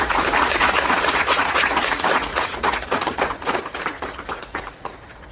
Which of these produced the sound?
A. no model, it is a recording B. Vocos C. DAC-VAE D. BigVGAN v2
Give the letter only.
B